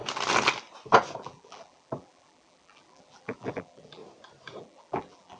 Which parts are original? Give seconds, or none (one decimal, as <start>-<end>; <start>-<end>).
0.0-1.2; 4.0-4.6